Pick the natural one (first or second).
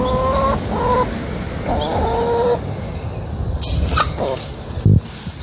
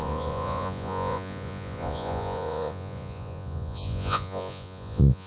first